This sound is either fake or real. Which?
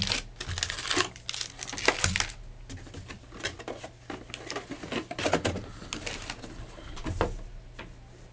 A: real